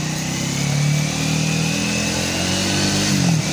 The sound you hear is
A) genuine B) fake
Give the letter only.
A